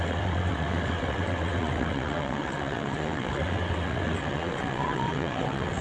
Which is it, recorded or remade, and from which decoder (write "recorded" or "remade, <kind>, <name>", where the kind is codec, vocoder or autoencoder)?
remade, vocoder, WaveNeXt